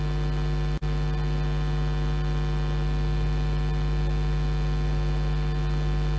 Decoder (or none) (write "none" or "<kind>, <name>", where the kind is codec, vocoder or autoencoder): none